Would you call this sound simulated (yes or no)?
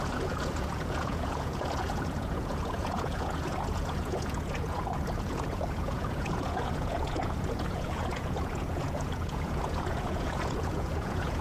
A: yes